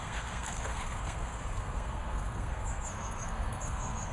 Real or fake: fake